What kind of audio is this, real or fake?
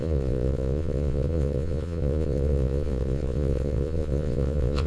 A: fake